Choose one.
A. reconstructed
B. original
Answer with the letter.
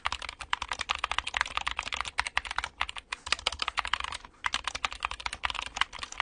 B